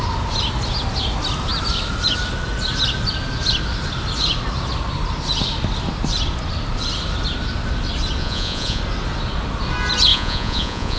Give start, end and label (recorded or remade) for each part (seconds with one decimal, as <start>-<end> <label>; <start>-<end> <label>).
0.0-8.2 recorded; 8.2-8.8 remade; 8.8-10.1 recorded; 10.1-11.0 remade